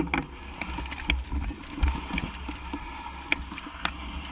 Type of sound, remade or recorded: recorded